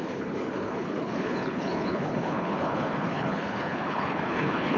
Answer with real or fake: fake